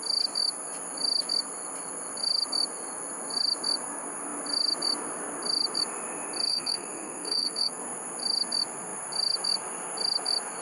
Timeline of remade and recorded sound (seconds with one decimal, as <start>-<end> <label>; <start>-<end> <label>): 0.0-6.5 recorded; 6.5-7.8 remade; 7.8-10.6 recorded